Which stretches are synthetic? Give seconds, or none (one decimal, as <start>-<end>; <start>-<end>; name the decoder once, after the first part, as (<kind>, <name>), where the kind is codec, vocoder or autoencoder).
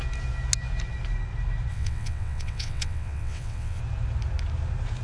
1.7-3.8 (vocoder, WaveNeXt)